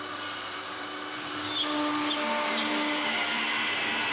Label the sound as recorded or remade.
recorded